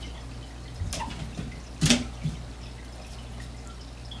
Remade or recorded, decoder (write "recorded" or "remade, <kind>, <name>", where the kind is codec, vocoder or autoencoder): recorded